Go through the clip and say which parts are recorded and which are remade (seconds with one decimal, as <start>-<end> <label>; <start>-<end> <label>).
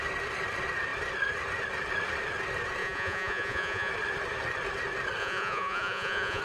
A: 0.0-2.8 recorded; 2.8-3.9 remade; 3.9-5.2 recorded; 5.2-6.4 remade